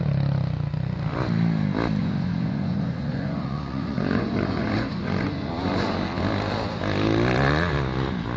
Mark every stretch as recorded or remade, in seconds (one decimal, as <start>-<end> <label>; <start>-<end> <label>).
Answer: 0.0-2.0 recorded; 2.0-5.5 remade; 5.5-8.4 recorded